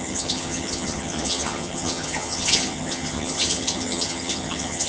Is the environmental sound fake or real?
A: fake